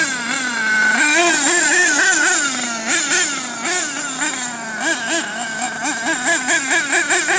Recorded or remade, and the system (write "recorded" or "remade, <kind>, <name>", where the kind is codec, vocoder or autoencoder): recorded